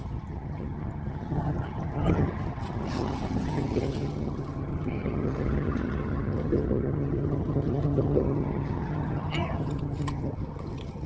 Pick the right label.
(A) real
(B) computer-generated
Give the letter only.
B